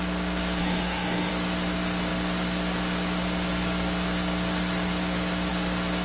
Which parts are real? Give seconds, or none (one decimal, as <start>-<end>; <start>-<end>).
0.0-0.6; 1.3-6.0